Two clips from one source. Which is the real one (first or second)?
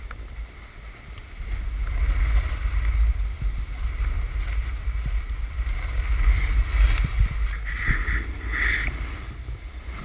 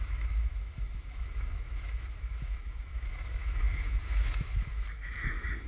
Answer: first